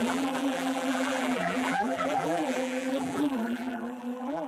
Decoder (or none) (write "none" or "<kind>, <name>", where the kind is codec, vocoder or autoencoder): vocoder, BigVGAN v2